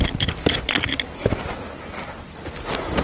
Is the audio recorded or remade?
recorded